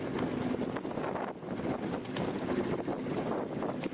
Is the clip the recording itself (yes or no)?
yes